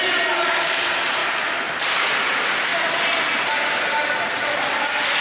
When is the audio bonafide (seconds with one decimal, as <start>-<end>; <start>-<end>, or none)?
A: 1.2-2.1; 2.7-4.7